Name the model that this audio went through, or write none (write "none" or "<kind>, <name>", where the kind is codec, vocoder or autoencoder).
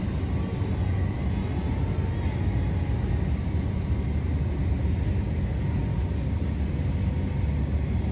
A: none